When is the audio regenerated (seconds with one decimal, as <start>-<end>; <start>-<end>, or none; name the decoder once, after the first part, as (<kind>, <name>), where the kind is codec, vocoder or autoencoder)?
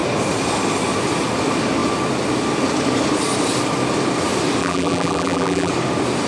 4.6-5.7 (vocoder, BigVGAN v2)